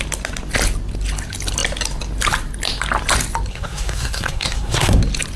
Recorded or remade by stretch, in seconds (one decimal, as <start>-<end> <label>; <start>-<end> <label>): 0.0-3.5 recorded; 3.5-5.0 remade; 5.0-5.4 recorded